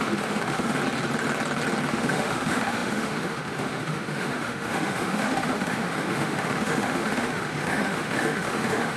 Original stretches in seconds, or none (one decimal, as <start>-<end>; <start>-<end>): 0.8-1.9